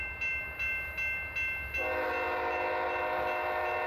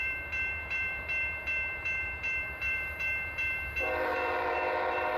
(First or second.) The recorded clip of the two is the first